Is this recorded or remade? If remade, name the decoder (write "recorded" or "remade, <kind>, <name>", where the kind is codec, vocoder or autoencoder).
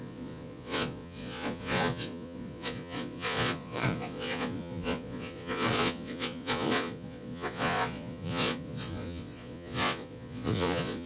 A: remade, vocoder, Vocos